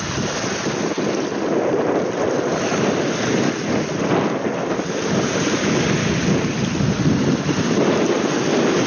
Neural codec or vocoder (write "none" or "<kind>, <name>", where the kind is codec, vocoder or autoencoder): none